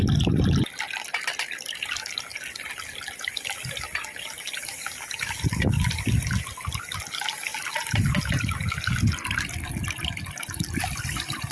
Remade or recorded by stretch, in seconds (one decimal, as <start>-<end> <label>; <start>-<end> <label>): 0.0-11.5 recorded